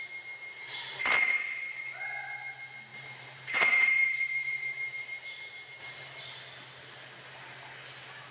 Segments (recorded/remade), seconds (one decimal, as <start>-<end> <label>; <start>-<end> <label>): 0.0-0.4 recorded; 0.4-1.0 remade; 1.0-2.9 recorded; 2.9-6.2 remade; 6.2-8.3 recorded